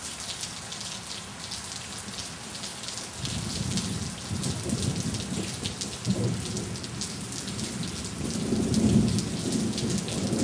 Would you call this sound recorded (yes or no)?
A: yes